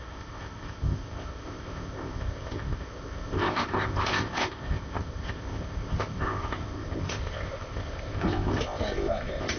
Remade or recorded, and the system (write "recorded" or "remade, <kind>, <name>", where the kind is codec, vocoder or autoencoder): remade, codec, ZipCodec